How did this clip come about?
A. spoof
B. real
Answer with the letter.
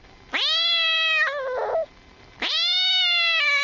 B